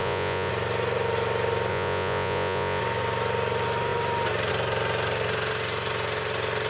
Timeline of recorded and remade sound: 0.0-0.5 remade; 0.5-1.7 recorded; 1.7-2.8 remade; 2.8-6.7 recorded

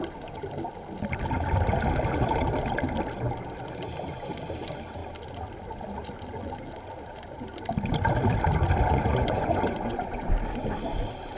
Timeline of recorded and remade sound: 0.0-8.8 recorded; 8.8-10.3 remade; 10.3-11.4 recorded

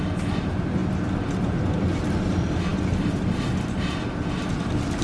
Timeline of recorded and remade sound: 0.0-5.0 recorded

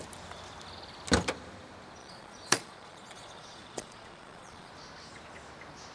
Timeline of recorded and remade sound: 0.0-2.0 recorded; 2.0-4.7 remade; 4.7-5.9 recorded